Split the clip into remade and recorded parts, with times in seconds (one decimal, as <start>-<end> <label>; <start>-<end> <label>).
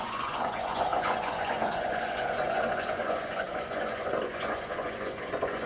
0.0-5.7 remade